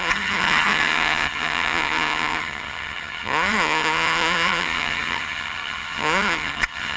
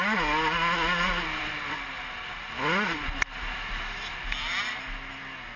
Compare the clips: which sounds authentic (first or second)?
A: second